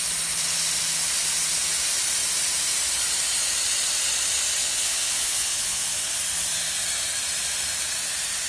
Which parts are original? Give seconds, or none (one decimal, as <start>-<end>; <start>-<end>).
0.0-4.6; 6.2-8.5